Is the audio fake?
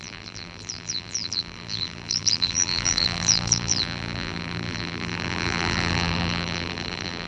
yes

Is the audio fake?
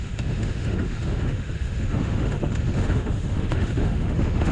yes